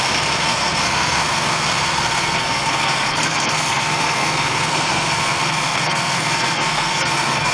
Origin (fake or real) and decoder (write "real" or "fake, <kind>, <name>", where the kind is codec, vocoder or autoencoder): fake, codec, SNAC